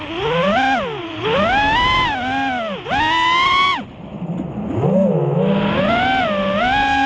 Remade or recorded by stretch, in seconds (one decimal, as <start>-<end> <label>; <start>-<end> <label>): 0.0-7.1 recorded